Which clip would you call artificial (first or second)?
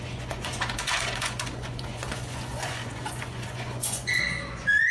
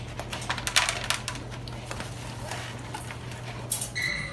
first